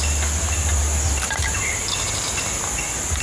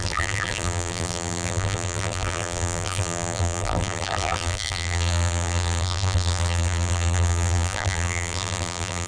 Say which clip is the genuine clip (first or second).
first